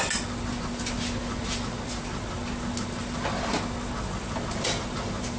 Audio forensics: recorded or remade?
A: recorded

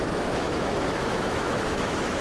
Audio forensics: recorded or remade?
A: remade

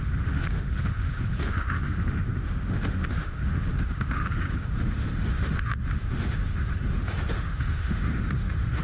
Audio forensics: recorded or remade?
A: remade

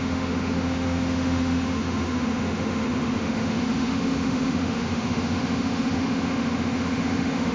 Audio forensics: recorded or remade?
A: remade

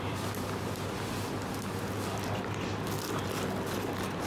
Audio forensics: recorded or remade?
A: recorded